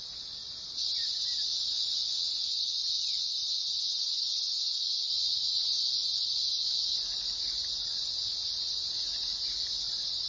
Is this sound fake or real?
real